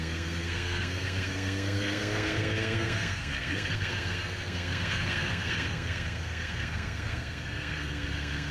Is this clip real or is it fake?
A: fake